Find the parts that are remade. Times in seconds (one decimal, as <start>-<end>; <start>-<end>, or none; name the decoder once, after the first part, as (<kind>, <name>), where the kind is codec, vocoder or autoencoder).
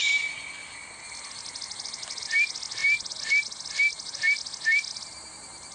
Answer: none